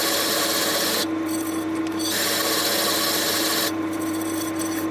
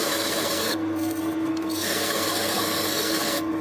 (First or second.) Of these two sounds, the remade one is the second